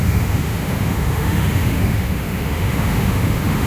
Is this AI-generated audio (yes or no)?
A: yes